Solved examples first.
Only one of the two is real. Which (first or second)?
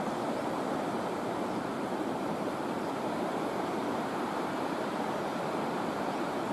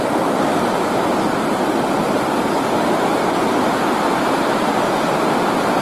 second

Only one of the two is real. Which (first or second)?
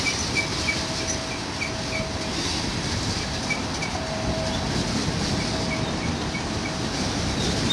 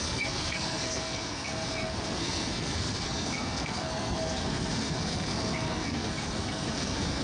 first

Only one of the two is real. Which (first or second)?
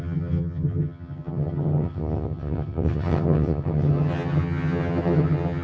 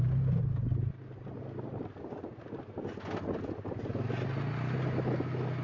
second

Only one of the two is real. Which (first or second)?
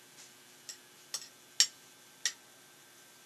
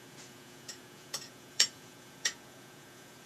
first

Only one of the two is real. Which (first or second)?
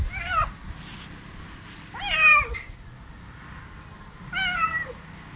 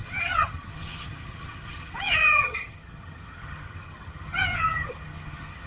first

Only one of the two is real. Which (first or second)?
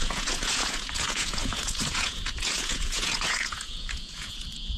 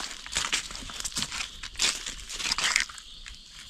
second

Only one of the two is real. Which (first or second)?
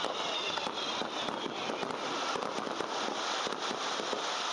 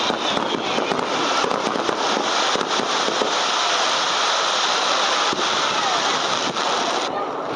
second